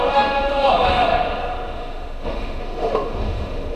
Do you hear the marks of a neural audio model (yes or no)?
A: yes